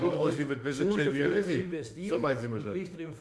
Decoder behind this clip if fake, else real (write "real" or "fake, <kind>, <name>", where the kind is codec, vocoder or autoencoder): fake, autoencoder, DAC-VAE